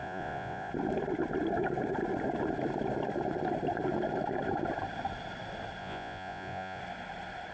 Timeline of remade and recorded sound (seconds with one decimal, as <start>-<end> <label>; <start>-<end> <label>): 0.0-0.7 remade; 0.7-5.8 recorded; 5.8-6.8 remade; 6.8-7.5 recorded

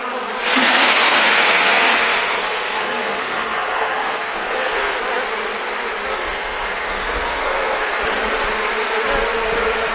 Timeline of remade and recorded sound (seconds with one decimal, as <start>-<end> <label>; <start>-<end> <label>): 0.0-0.6 recorded; 0.6-5.0 remade; 5.0-6.1 recorded; 6.1-8.0 remade; 8.0-9.9 recorded

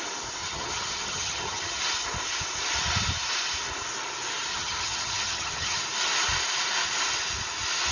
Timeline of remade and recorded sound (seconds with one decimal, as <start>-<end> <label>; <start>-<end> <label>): 0.0-0.4 recorded; 0.4-1.8 remade; 1.8-4.5 recorded; 4.5-5.8 remade; 5.8-7.9 recorded

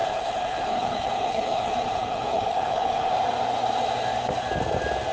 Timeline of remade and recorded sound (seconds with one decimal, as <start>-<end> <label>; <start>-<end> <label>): 0.0-3.1 remade; 3.1-5.1 recorded